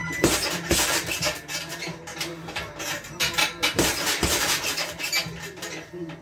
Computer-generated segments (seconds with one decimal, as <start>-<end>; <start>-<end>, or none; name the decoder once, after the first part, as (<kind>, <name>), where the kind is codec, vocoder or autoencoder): 0.9-2.1 (vocoder, BigVGAN v2); 2.8-5.2